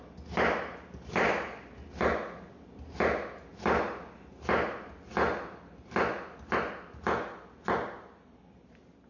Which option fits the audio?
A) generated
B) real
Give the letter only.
B